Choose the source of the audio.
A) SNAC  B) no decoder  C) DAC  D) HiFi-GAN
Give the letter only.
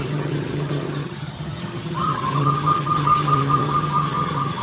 D